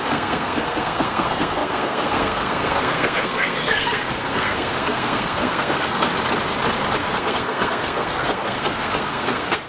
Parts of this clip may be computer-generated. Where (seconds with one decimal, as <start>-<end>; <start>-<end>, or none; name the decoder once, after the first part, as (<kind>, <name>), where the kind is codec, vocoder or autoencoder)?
0.0-6.1 (codec, SNAC); 7.0-9.7